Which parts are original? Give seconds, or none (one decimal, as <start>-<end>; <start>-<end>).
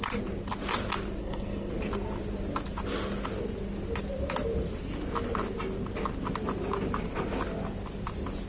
0.0-1.2; 1.7-8.5